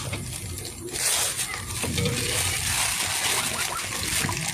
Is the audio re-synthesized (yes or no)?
no